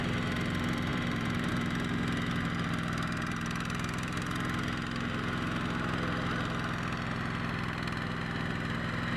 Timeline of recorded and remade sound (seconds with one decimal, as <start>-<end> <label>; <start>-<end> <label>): 0.0-0.9 recorded; 0.9-1.5 remade; 1.5-9.2 recorded